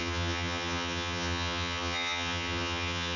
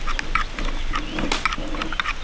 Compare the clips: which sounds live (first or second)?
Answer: second